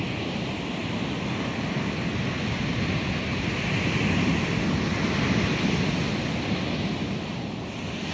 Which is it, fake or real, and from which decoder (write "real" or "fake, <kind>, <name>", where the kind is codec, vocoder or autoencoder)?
real